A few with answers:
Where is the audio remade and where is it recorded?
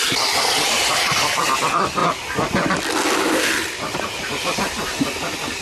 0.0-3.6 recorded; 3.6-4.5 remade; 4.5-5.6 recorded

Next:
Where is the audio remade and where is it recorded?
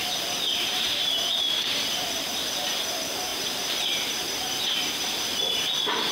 0.0-0.5 recorded; 0.5-1.8 remade; 1.8-3.3 recorded; 3.3-3.8 remade; 3.8-6.1 recorded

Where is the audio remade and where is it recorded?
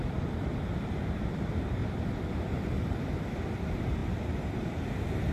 0.0-1.8 remade; 1.8-2.6 recorded; 2.6-4.0 remade; 4.0-4.5 recorded; 4.5-5.3 remade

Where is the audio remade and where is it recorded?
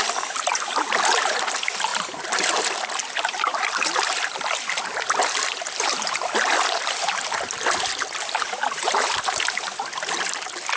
0.0-0.5 remade; 0.5-1.9 recorded; 1.9-5.8 remade; 5.8-10.8 recorded